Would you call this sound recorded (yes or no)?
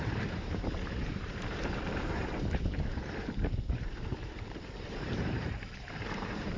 no